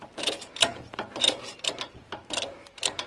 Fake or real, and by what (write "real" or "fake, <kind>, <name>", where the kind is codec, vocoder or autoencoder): fake, vocoder, BigVGAN v2